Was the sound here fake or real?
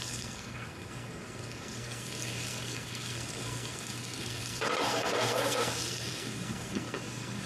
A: fake